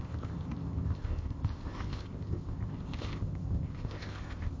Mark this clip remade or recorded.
remade